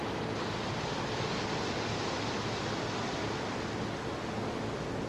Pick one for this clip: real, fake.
real